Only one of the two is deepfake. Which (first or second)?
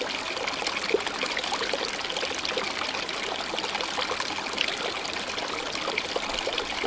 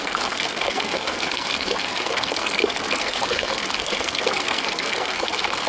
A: second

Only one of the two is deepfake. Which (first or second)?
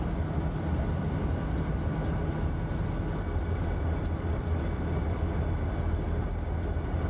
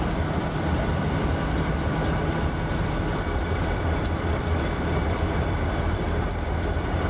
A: second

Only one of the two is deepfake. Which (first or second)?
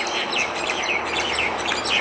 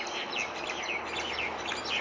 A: first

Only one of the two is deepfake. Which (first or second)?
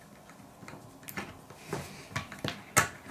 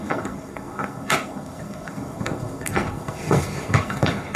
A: second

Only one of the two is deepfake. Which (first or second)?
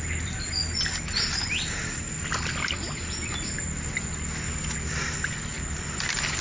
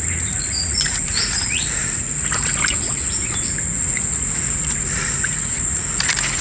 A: second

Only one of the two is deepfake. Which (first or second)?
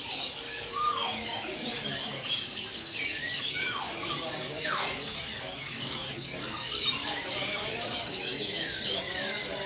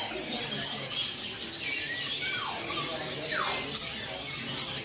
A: first